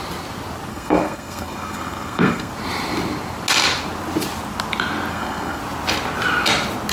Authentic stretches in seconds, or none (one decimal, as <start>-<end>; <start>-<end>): 0.0-0.7; 2.5-5.1; 5.6-6.9